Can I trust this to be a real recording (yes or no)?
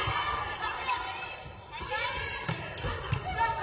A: yes